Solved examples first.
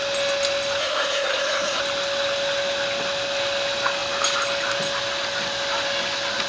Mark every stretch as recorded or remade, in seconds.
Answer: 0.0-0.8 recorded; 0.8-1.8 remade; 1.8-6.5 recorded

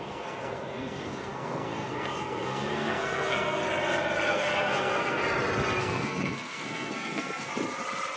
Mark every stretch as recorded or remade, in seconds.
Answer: 0.0-3.6 remade; 3.6-4.3 recorded; 4.3-5.2 remade; 5.2-5.8 recorded; 5.8-7.5 remade; 7.5-8.2 recorded

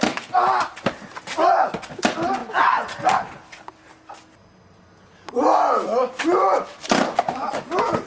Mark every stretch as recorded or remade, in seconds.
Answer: 0.0-8.1 recorded

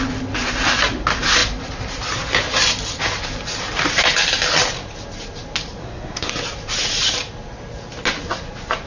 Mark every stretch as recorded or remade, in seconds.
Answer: 0.0-5.8 recorded; 5.8-6.3 remade; 6.3-8.9 recorded

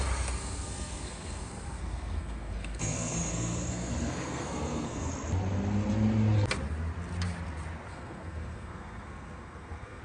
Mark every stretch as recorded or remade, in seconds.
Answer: 0.0-0.4 recorded; 0.4-5.1 remade; 5.1-7.9 recorded; 7.9-10.0 remade

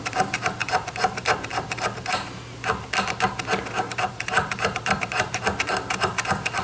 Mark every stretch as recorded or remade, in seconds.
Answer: 0.0-6.6 recorded